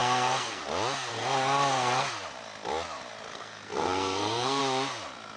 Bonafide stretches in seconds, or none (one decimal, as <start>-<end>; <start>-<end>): 0.6-1.1; 2.1-3.3; 4.6-5.4